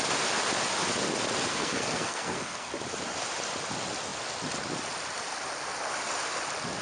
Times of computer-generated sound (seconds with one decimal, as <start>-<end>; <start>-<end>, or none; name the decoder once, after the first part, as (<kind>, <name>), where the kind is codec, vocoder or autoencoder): 1.5-2.7 (codec, SNAC)